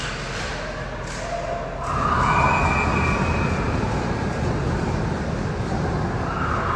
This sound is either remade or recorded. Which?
recorded